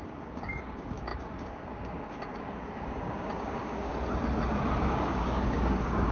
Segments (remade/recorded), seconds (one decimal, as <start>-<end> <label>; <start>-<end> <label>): 0.0-3.9 remade; 3.9-4.8 recorded; 4.8-6.1 remade